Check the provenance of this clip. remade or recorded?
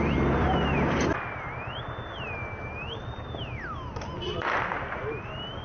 recorded